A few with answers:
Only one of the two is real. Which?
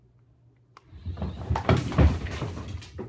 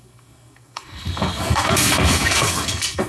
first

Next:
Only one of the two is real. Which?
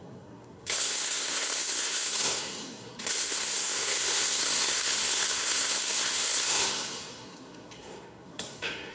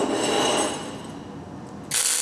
second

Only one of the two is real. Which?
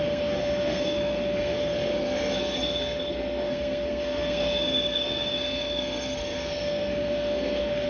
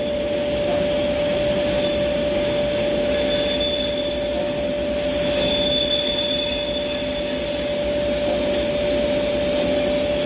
second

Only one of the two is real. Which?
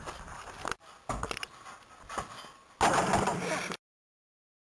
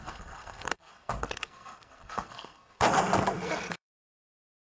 first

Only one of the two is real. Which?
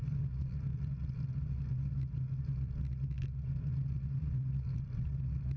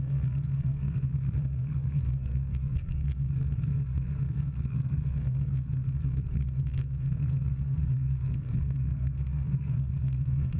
first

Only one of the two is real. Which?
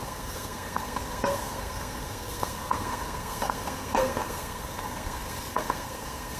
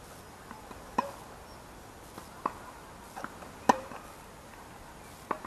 second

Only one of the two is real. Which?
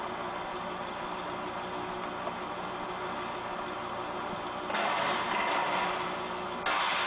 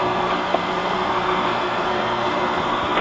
first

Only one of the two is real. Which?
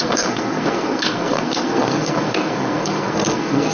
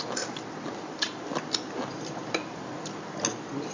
second